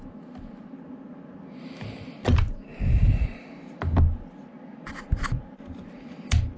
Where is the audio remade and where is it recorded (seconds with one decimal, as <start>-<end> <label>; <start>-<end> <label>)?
0.0-6.6 recorded